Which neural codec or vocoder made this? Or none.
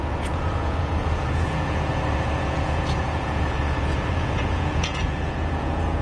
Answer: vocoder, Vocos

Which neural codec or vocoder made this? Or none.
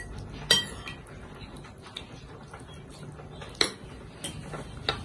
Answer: none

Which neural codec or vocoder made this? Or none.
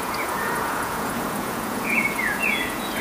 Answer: vocoder, Vocos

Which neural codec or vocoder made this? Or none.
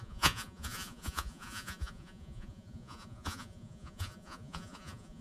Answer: vocoder, Vocos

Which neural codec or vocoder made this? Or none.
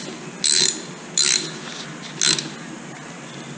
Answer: none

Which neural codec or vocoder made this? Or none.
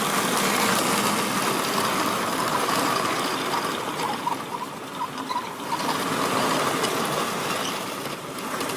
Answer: none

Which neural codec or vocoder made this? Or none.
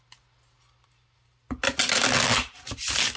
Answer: none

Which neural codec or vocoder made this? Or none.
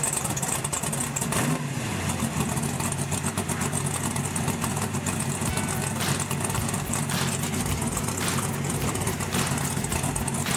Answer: none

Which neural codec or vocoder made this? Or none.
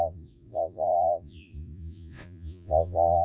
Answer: vocoder, Vocos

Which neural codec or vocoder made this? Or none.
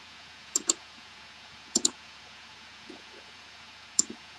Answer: vocoder, Vocos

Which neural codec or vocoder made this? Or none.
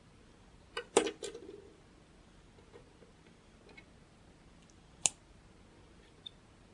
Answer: none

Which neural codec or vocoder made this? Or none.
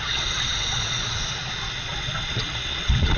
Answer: vocoder, Vocos